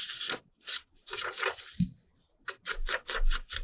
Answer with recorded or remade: recorded